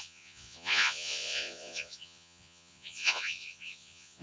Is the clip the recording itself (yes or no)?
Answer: no